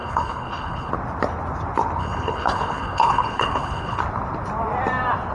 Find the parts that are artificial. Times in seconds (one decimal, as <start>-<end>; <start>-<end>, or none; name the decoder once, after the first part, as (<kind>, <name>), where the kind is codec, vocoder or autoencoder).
0.0-0.9 (codec, HILCodec); 2.0-4.0

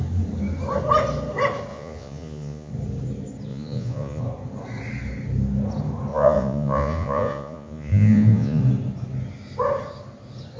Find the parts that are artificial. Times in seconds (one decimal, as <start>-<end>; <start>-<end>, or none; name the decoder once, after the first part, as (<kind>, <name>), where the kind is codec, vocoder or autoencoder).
1.7-2.7 (vocoder, Vocos); 3.5-4.2; 6.1-8.6

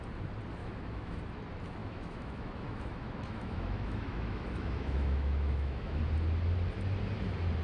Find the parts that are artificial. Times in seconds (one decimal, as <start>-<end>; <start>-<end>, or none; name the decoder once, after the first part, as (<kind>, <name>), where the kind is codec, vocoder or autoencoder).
0.6-1.2 (autoencoder, DAC-VAE); 1.8-6.0